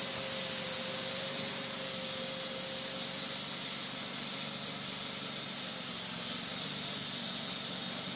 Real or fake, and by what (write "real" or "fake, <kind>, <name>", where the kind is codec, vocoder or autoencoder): real